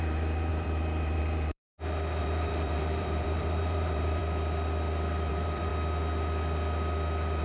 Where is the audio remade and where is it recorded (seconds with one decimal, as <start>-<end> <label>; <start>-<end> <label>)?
0.0-1.7 remade; 1.7-2.2 recorded; 2.2-4.2 remade; 4.2-5.3 recorded; 5.3-5.7 remade; 5.7-7.4 recorded